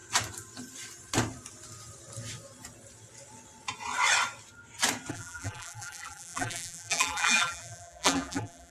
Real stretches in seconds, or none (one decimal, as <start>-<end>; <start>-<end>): 0.0-5.1